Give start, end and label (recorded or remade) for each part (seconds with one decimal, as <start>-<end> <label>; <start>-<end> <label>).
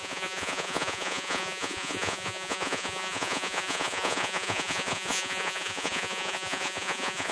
0.0-7.3 remade